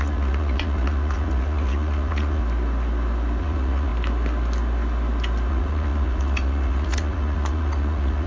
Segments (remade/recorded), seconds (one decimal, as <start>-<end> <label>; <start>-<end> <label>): 0.0-2.4 remade; 2.4-3.4 recorded; 3.4-3.9 remade; 3.9-5.5 recorded; 5.5-8.3 remade